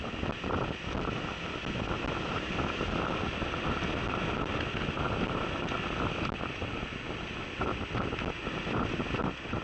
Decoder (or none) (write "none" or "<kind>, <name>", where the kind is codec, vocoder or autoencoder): none